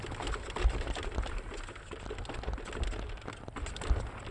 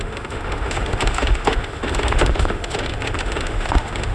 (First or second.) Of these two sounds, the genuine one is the first